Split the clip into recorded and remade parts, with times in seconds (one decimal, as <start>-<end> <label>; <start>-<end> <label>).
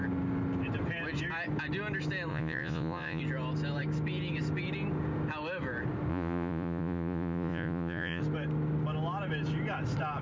0.0-2.3 recorded; 2.3-3.2 remade; 3.2-6.1 recorded; 6.1-8.2 remade; 8.2-10.2 recorded